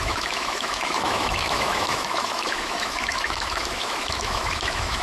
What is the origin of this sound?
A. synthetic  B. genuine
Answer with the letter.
A